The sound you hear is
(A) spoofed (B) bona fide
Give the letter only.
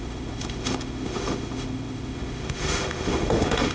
A